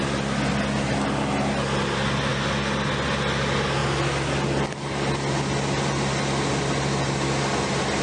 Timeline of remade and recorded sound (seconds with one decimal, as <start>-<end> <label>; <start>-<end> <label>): 0.0-8.0 recorded